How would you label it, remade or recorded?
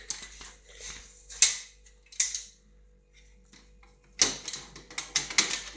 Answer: recorded